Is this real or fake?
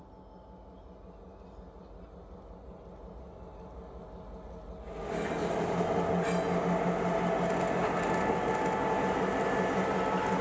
real